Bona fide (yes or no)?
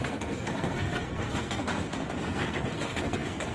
no